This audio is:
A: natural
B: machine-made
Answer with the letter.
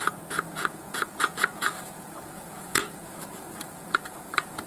B